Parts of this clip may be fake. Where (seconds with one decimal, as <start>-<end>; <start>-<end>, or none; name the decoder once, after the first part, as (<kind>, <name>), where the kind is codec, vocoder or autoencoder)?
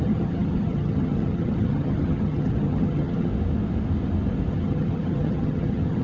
0.0-3.3 (vocoder, HiFi-GAN); 4.5-6.0